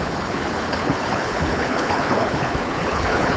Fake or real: fake